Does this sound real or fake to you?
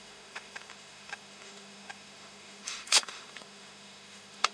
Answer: fake